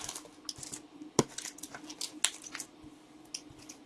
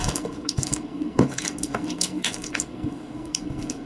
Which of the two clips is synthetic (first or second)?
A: second